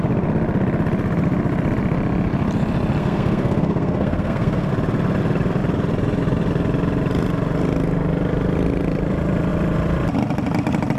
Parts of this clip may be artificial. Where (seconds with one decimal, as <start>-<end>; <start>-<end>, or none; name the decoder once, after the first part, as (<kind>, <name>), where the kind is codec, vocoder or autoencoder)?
3.0-4.7 (codec, SNAC)